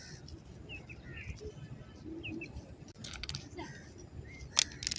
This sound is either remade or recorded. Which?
recorded